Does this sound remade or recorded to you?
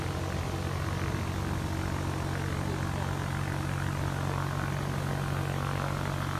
recorded